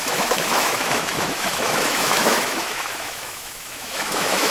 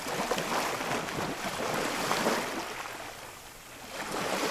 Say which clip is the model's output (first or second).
first